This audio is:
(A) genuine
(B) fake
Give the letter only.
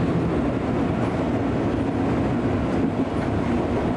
A